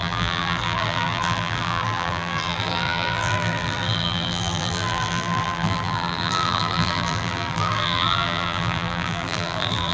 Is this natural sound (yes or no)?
no